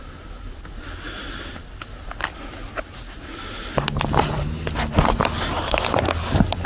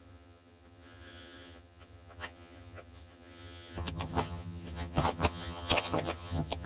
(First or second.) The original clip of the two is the first